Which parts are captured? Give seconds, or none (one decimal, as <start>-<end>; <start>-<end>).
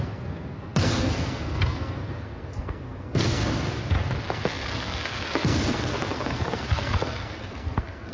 3.4-4.3